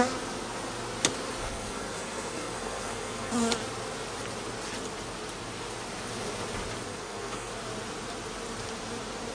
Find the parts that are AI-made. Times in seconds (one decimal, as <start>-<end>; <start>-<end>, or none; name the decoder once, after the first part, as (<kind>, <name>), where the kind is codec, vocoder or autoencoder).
1.4-3.3 (codec, SNAC); 6.9-7.5